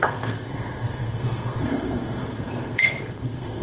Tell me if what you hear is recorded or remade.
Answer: remade